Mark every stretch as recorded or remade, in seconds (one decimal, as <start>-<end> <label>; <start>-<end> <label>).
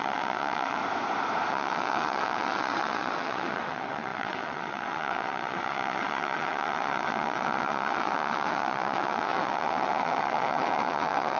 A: 0.0-0.8 remade; 0.8-1.5 recorded; 1.5-11.4 remade